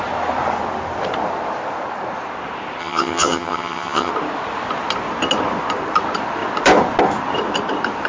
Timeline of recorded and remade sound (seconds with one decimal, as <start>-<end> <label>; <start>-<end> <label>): 0.0-2.8 recorded; 2.8-4.1 remade; 4.1-8.1 recorded